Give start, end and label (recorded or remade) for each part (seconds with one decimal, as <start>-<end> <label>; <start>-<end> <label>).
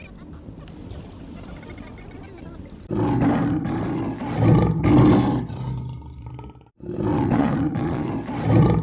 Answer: 0.0-7.1 recorded; 7.1-8.1 remade; 8.1-8.8 recorded